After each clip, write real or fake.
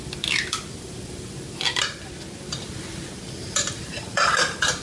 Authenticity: fake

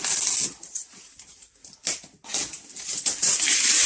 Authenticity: real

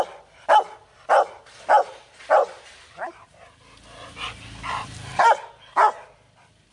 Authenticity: real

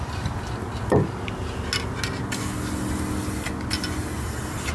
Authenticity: real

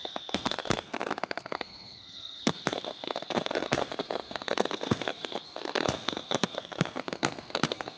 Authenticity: fake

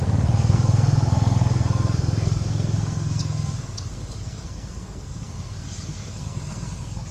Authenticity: fake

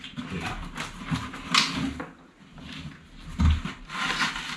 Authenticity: real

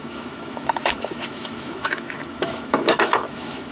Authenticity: fake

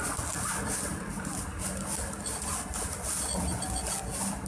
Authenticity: real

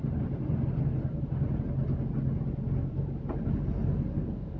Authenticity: real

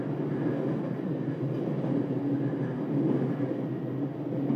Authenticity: real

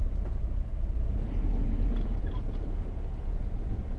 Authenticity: fake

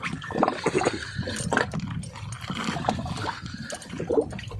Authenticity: real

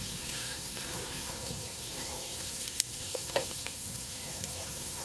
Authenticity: fake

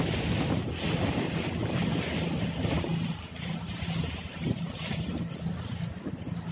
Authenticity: real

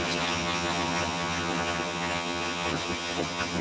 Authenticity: fake